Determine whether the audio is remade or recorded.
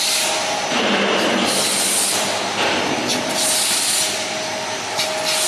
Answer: recorded